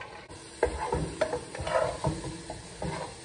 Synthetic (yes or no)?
no